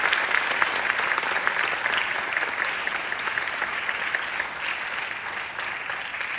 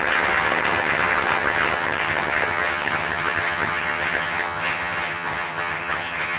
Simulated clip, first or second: second